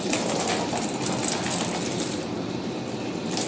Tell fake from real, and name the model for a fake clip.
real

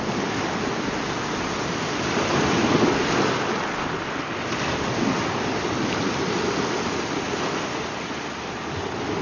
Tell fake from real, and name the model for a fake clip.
real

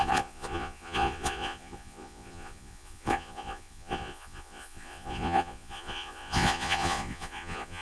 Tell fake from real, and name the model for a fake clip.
fake, vocoder, Vocos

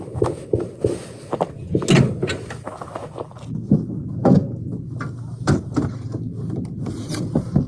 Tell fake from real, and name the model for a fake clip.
real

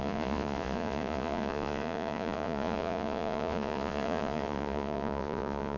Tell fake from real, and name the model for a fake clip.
fake, vocoder, Vocos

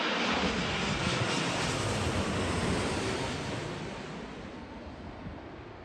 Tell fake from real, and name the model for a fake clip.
real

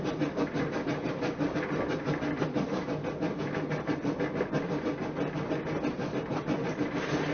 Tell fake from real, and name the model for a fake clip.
real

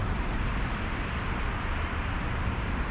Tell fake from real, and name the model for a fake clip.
fake, vocoder, BigVGAN v2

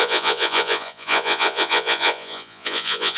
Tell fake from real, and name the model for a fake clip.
fake, vocoder, Vocos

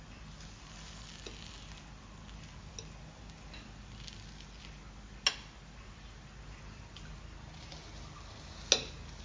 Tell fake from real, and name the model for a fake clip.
real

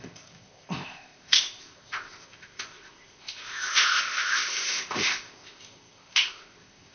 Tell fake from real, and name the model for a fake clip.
fake, codec, ZipCodec